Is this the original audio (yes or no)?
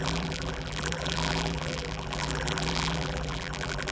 no